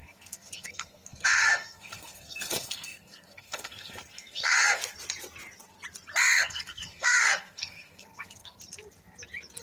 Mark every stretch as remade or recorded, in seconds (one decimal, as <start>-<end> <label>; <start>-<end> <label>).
0.0-4.8 remade; 4.8-6.2 recorded; 6.2-8.6 remade; 8.6-9.6 recorded